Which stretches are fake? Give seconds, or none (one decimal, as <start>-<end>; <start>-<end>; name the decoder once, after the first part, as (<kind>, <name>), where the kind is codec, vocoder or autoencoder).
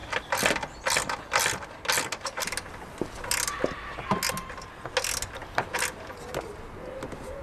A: none